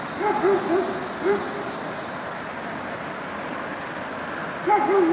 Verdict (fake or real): real